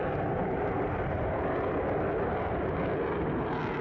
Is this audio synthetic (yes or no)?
no